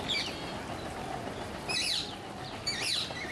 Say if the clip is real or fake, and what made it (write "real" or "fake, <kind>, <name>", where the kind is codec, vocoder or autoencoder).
fake, vocoder, BigVGAN v2